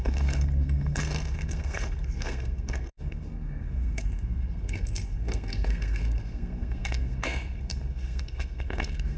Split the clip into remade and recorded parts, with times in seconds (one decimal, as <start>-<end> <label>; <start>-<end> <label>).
0.0-9.2 remade